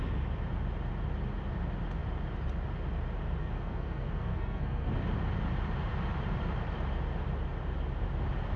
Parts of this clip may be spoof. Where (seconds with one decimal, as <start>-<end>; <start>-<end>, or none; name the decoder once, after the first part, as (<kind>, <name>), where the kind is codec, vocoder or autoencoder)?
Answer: 3.4-4.9 (codec, SNAC)